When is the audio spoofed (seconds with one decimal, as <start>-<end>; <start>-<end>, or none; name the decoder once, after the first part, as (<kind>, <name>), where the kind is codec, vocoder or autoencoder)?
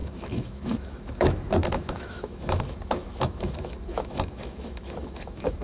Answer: 0.0-5.6 (autoencoder, DAC-VAE)